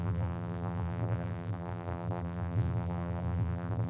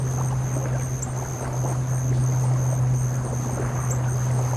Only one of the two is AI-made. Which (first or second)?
first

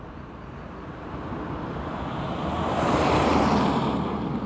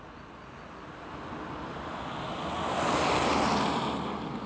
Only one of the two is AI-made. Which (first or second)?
first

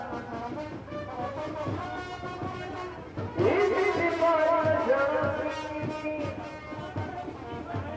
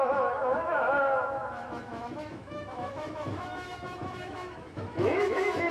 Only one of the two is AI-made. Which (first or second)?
second